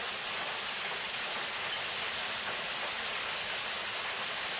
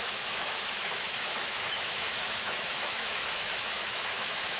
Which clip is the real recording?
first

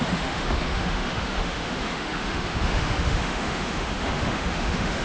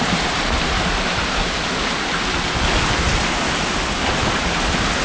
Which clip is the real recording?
second